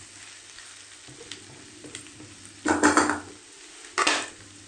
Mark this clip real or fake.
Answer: real